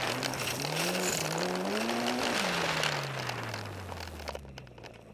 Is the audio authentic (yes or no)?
yes